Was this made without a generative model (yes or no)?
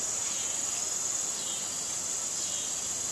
yes